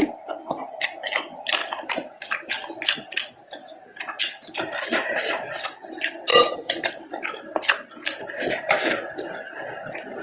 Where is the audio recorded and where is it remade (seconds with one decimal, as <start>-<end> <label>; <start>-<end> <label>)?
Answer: 0.0-6.3 recorded; 6.3-6.9 remade; 6.9-10.2 recorded